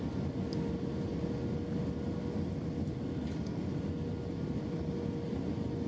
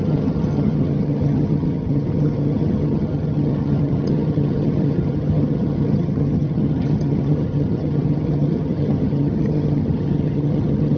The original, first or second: first